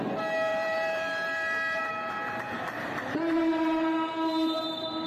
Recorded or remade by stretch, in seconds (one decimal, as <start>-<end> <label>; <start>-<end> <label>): 0.0-0.5 recorded; 0.5-1.9 remade; 1.9-5.1 recorded